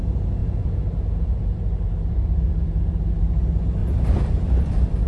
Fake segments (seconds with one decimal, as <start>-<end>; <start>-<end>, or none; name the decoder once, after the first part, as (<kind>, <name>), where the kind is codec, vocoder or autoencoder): 0.4-3.1 (vocoder, BigVGAN v2); 3.8-5.1

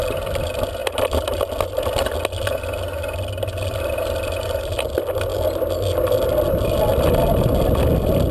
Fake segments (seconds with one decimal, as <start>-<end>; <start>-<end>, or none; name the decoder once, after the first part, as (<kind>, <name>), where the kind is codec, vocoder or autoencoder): none

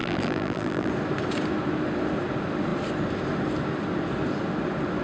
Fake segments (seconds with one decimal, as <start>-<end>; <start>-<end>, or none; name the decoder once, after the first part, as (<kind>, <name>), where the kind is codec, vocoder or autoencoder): 0.0-0.9 (vocoder, BigVGAN v2)

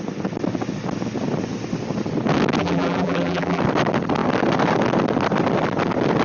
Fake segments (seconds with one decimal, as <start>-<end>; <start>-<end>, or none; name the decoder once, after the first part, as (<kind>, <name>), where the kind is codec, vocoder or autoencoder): 2.6-3.6 (vocoder, BigVGAN v2)

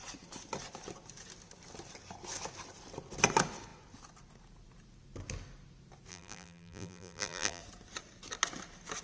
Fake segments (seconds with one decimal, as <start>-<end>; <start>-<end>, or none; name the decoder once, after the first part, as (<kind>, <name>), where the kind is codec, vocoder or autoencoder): 6.1-7.6 (vocoder, BigVGAN v2)